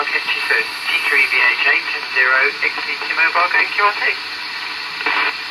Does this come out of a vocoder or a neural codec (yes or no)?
no